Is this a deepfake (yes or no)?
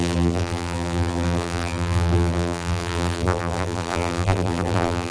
yes